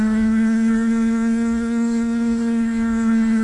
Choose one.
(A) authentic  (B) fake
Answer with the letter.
B